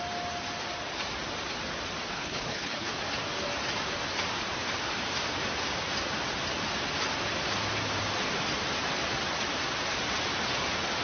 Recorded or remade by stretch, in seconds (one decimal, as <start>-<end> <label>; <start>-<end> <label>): 0.0-2.1 recorded; 2.1-2.9 remade; 2.9-11.0 recorded

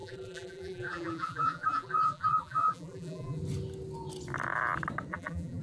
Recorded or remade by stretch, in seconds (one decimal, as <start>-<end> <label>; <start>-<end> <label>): 0.0-3.4 remade; 3.4-5.1 recorded; 5.1-5.6 remade

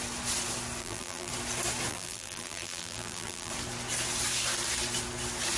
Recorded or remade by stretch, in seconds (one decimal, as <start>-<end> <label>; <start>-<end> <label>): 0.0-0.8 recorded; 0.8-1.3 remade; 1.3-1.9 recorded; 1.9-3.5 remade; 3.5-5.6 recorded

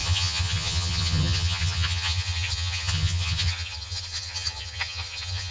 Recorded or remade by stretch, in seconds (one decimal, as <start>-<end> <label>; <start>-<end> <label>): 0.0-5.5 remade

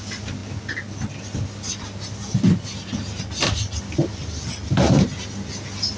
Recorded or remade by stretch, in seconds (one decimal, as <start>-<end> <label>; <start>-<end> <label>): 0.0-6.0 recorded

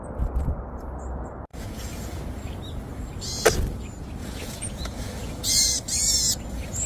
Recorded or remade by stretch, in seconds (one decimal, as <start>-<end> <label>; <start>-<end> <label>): 0.0-1.5 recorded; 1.5-2.2 remade; 2.2-4.2 recorded; 4.2-5.5 remade; 5.5-6.9 recorded

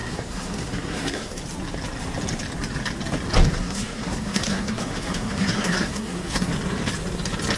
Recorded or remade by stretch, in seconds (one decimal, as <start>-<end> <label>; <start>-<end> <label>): 0.0-1.4 remade; 1.4-3.5 recorded; 3.5-6.5 remade; 6.5-7.6 recorded